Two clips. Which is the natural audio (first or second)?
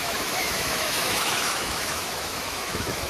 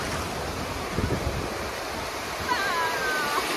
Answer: second